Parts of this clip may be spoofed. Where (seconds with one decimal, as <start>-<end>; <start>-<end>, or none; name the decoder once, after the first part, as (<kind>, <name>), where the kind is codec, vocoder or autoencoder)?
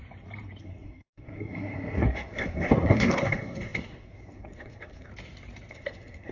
0.6-5.1 (codec, SNAC); 5.7-6.3